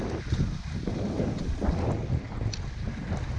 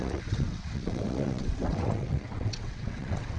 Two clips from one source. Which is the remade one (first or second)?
second